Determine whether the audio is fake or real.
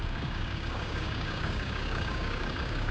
fake